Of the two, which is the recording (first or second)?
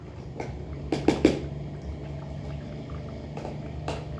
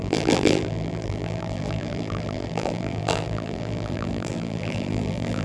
first